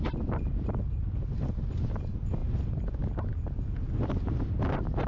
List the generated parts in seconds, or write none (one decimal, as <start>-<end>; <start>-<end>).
none